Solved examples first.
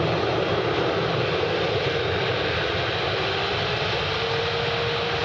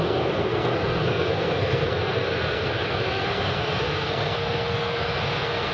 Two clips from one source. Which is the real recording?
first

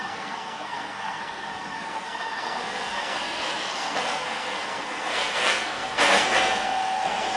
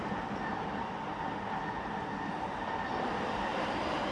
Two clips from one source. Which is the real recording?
second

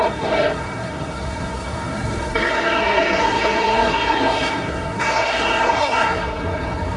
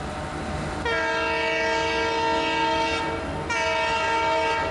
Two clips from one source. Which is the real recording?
second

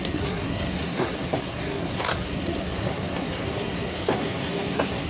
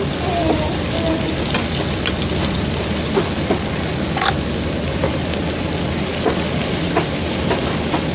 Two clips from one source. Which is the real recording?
second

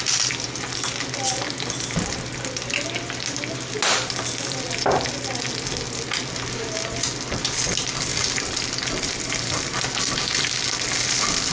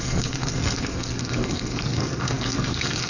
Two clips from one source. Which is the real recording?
first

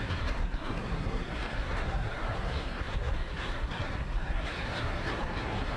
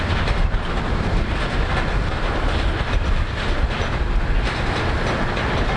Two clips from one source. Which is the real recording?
second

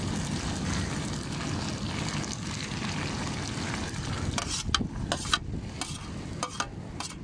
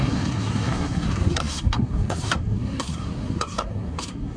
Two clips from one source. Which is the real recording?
first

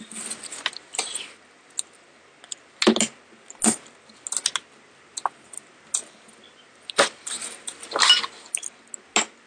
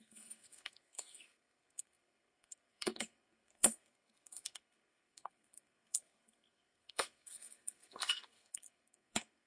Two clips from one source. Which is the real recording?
first